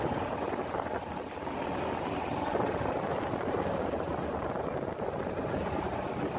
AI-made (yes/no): no